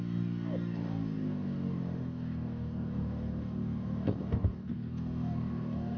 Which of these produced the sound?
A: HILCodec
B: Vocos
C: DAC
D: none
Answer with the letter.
C